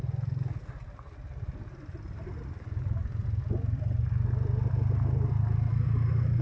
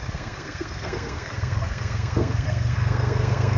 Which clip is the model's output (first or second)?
second